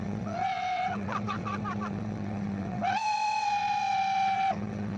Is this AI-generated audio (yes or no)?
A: yes